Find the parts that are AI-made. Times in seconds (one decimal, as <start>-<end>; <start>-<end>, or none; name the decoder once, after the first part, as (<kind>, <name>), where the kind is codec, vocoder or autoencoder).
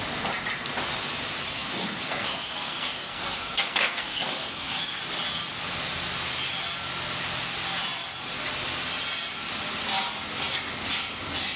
1.6-5.0 (codec, SNAC)